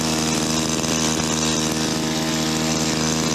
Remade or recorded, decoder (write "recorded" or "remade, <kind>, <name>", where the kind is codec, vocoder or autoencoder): recorded